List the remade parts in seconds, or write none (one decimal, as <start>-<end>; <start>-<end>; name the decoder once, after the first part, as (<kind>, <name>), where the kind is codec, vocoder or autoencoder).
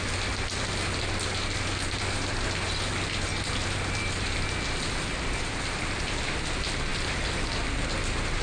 none